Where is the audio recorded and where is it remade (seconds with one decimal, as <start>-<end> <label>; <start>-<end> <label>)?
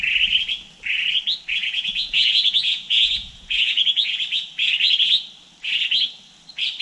0.0-1.6 recorded; 1.6-4.2 remade; 4.2-6.8 recorded